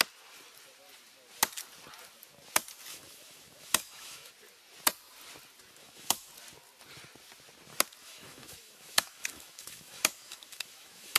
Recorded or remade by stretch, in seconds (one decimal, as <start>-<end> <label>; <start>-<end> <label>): 0.0-2.9 recorded; 2.9-4.3 remade; 4.3-5.8 recorded; 5.8-6.3 remade; 6.3-8.0 recorded; 8.0-11.2 remade